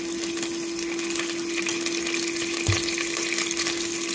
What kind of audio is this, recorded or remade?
recorded